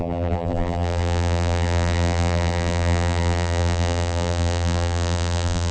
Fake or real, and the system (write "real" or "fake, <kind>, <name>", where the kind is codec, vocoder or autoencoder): fake, vocoder, BigVGAN v2